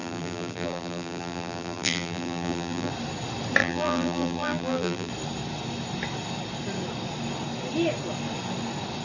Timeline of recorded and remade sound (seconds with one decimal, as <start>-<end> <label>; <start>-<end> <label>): 0.0-2.9 remade; 2.9-3.6 recorded; 3.6-5.1 remade; 5.1-9.0 recorded